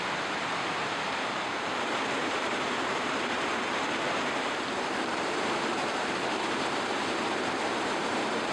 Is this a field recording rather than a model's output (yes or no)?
no